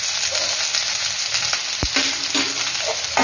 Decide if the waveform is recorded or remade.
recorded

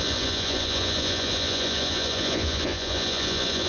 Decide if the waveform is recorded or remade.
remade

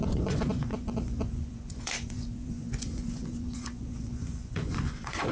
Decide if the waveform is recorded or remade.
remade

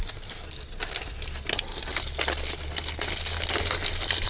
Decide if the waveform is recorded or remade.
recorded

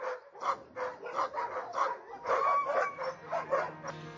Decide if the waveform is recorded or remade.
recorded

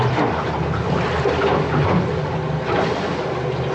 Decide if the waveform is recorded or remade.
recorded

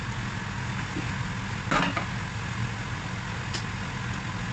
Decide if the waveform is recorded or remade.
recorded